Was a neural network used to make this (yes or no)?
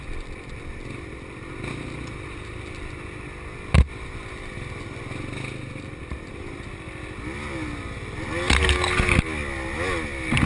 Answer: no